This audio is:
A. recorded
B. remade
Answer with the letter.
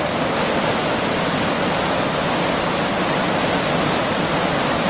A